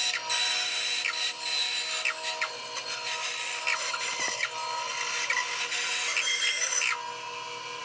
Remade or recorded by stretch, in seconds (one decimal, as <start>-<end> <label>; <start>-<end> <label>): 0.0-3.4 recorded; 3.4-4.6 remade; 4.6-7.8 recorded